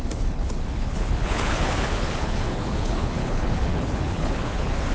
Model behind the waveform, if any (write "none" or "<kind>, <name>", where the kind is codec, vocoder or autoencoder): codec, HILCodec